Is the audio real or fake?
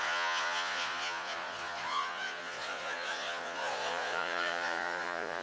fake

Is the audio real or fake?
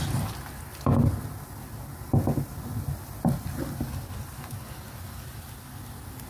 real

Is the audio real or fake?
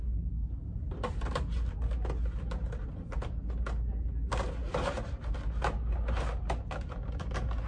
real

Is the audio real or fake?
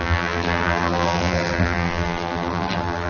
fake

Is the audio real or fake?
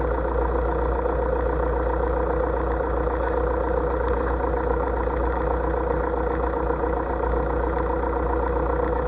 real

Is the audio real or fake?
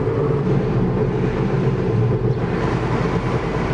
fake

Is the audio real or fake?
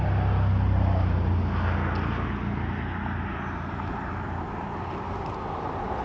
real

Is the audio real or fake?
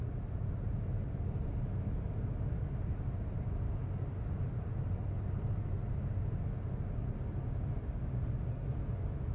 real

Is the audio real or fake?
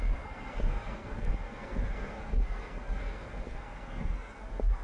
fake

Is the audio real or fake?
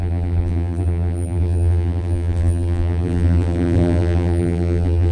fake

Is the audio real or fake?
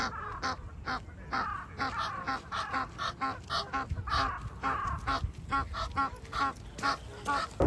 real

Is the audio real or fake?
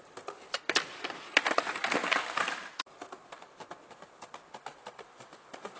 real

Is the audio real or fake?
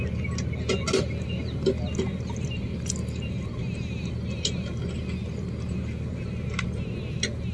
real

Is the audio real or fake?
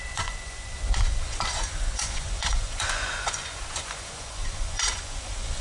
fake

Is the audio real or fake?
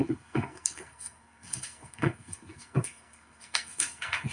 fake